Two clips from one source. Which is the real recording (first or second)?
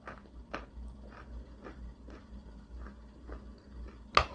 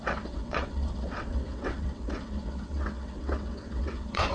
first